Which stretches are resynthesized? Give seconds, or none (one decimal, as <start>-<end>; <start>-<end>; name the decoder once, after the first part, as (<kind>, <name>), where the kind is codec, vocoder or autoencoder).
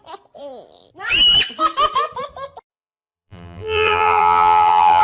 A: 2.7-5.0 (vocoder, BigVGAN v2)